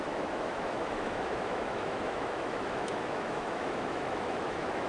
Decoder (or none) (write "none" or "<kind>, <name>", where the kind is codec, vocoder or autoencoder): autoencoder, DAC-VAE